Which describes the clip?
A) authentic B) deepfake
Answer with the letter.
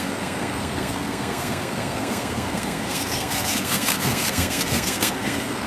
B